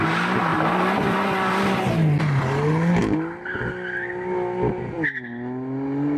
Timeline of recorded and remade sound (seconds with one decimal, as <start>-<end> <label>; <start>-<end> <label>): 0.0-0.5 recorded; 0.5-2.2 remade; 2.2-6.2 recorded